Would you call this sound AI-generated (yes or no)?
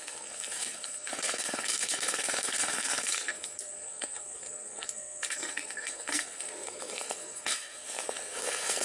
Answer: yes